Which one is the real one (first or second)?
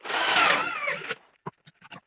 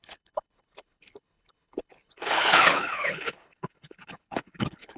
first